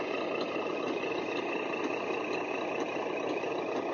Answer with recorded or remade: recorded